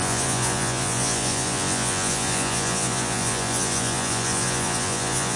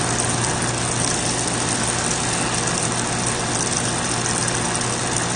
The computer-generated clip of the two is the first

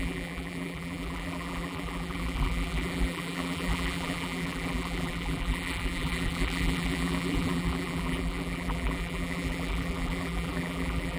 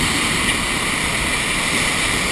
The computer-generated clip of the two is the first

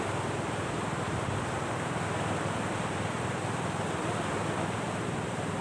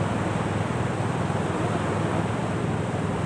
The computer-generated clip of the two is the first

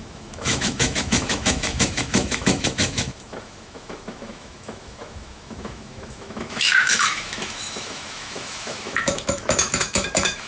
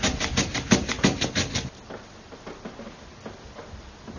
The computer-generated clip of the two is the first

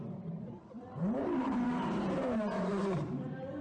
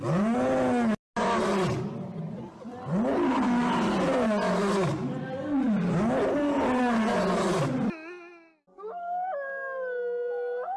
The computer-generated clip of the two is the first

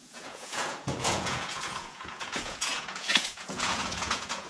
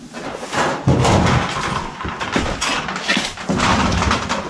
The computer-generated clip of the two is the first